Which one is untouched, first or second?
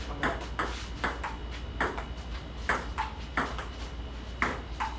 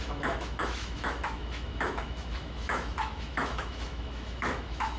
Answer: first